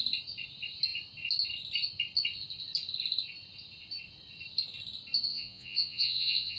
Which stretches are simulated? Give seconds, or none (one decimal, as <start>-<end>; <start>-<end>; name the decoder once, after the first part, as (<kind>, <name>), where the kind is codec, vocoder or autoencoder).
5.3-6.6 (vocoder, Vocos)